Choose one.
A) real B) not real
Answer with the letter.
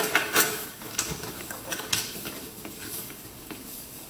B